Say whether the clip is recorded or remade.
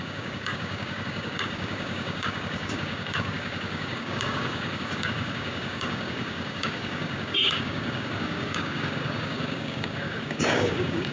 remade